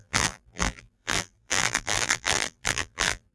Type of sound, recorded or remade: remade